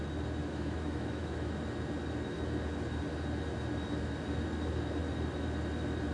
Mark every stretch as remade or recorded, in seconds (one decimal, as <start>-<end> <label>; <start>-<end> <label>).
0.0-0.4 recorded; 0.4-1.5 remade; 1.5-6.1 recorded